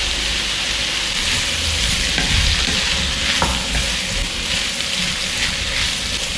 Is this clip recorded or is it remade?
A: recorded